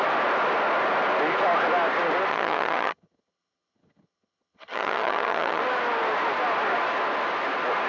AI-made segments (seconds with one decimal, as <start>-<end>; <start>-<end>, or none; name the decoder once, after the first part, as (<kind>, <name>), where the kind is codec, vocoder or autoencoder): 2.3-5.6 (vocoder, HiFi-GAN)